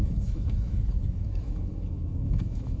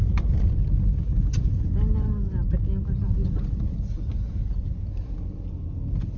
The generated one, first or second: first